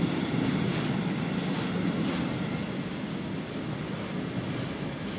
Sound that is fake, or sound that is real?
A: real